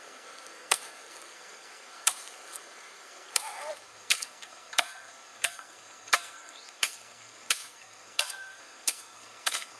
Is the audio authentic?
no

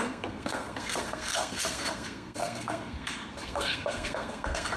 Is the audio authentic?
no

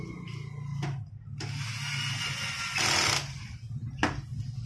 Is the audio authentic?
yes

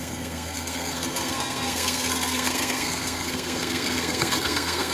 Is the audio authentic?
no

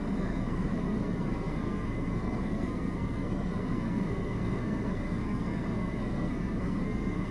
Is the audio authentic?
no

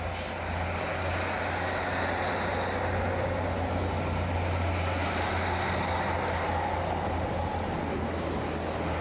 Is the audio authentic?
yes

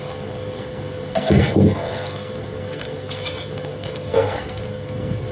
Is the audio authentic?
no